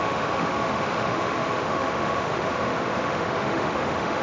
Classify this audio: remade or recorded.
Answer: remade